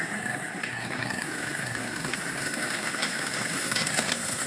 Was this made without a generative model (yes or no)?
no